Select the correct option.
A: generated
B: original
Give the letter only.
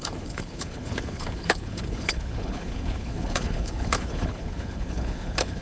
A